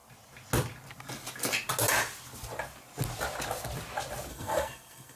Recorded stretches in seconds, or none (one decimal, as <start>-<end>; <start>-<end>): 0.0-4.3